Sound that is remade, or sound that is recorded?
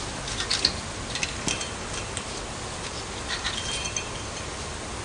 recorded